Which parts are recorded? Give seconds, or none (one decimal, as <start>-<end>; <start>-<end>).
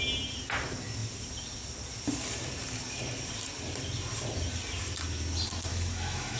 0.0-5.7